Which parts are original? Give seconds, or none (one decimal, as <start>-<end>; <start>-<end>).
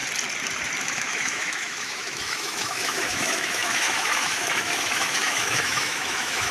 0.0-0.8